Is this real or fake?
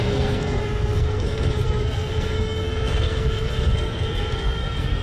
fake